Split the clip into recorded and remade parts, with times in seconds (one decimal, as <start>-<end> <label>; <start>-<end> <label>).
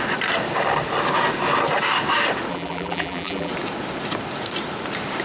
0.0-2.5 recorded; 2.5-3.5 remade; 3.5-5.2 recorded